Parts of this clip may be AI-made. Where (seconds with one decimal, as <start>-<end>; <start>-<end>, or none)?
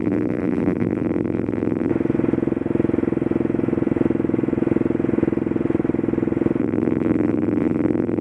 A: 0.0-1.9; 6.6-8.2